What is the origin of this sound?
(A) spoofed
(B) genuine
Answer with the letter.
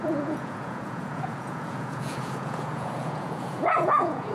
A